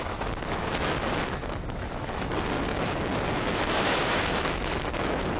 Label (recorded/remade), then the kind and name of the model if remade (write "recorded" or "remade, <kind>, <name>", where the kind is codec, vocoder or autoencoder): remade, autoencoder, DAC-VAE